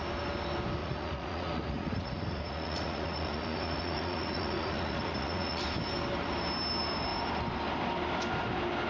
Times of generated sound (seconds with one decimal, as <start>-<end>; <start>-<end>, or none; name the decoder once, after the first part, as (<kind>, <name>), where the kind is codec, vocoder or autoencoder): 0.8-5.6 (vocoder, Vocos)